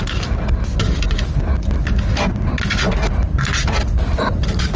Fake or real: real